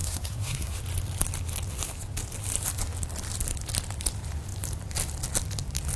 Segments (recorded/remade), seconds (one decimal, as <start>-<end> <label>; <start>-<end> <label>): 0.0-0.8 remade; 0.8-6.0 recorded